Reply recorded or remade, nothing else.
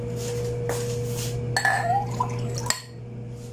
recorded